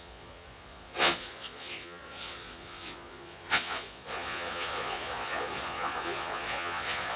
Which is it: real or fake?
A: fake